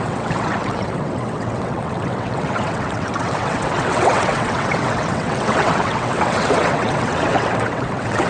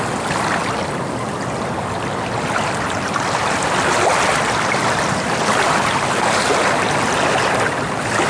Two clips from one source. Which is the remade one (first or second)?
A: first